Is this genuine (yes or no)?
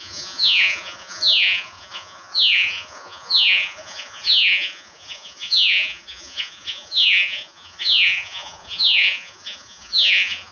no